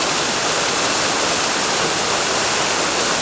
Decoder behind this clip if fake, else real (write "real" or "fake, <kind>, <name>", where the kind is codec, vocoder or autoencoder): real